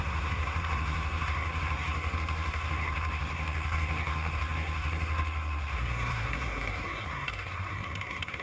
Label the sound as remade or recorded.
remade